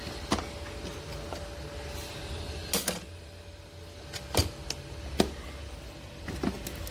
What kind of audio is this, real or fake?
real